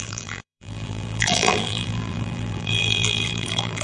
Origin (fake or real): fake